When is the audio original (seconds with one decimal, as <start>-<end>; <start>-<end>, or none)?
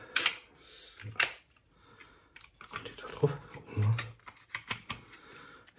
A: 0.0-5.8